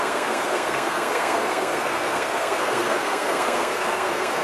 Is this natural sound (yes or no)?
no